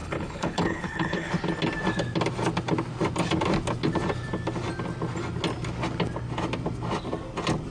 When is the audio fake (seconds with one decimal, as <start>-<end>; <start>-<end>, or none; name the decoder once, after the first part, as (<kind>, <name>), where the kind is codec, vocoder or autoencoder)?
0.0-1.3 (codec, HILCodec)